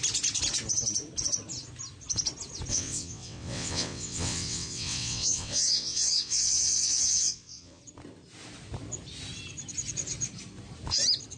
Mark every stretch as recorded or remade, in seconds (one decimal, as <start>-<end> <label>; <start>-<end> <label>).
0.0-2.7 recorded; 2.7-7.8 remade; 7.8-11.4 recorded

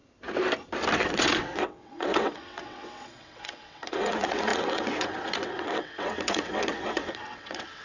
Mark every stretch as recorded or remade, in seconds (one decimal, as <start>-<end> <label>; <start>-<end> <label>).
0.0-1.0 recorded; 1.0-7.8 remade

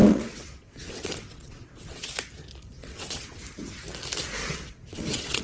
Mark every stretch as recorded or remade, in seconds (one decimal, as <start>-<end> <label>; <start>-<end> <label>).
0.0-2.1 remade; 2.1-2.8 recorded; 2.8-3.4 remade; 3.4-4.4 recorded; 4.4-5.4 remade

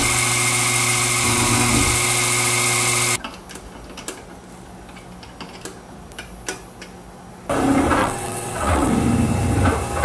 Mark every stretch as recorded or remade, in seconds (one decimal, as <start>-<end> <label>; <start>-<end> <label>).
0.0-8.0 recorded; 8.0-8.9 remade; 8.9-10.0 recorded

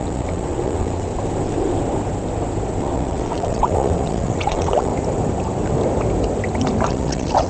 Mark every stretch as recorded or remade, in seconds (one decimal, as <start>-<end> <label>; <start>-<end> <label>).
0.0-1.1 remade; 1.1-2.8 recorded; 2.8-4.9 remade; 4.9-6.9 recorded; 6.9-7.5 remade